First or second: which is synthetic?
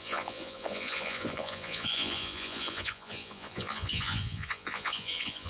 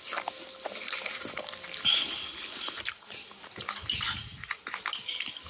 first